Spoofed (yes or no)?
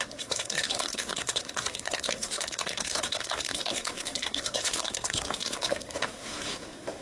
yes